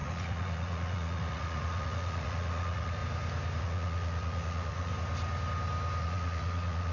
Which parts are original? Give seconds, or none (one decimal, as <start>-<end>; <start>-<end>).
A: 3.0-3.6; 4.9-6.0